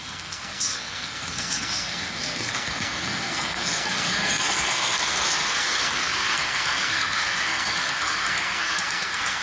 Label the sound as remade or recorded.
remade